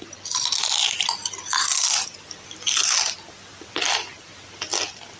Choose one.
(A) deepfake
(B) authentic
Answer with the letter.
B